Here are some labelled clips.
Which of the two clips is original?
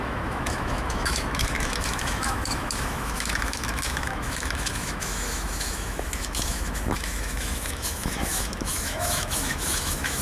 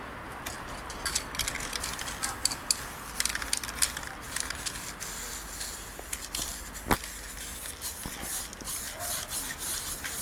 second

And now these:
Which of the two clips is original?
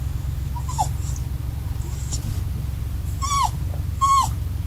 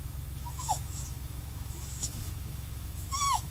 first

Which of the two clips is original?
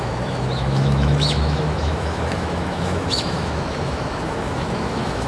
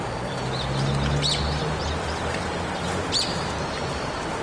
second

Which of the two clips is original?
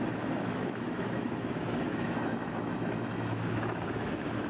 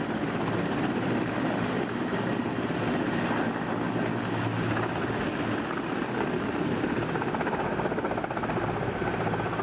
second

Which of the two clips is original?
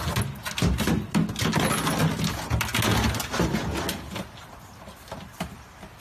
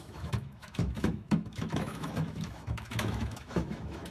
first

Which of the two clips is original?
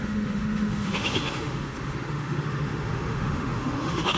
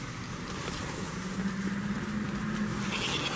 second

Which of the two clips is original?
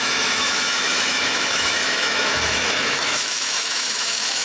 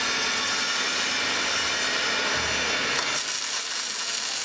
second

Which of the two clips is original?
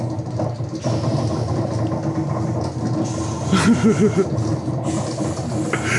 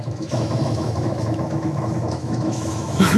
first